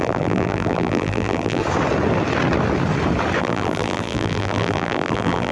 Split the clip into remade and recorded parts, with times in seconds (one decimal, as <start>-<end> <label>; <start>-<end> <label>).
0.0-1.6 remade; 1.6-3.4 recorded; 3.4-5.5 remade